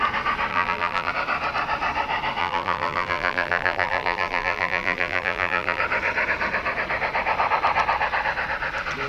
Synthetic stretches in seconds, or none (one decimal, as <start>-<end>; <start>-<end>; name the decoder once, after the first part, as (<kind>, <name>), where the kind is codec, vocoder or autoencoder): 0.5-1.1 (vocoder, BigVGAN v2); 2.4-5.8